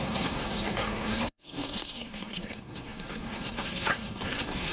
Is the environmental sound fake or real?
fake